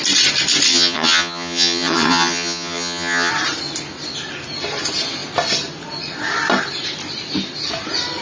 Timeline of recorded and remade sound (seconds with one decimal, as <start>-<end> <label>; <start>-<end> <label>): 0.0-0.7 recorded; 0.7-3.3 remade; 3.3-8.2 recorded